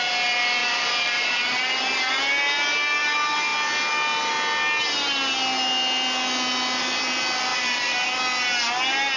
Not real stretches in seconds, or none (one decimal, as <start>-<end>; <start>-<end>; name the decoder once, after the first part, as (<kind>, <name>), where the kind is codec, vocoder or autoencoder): 0.6-2.2 (vocoder, BigVGAN v2); 7.5-8.2